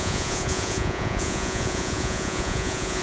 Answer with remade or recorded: remade